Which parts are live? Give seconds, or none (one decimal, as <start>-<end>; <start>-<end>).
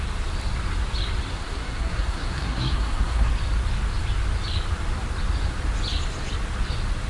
0.0-1.3; 3.3-7.1